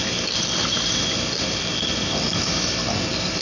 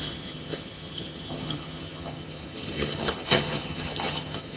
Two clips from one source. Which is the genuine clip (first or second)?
first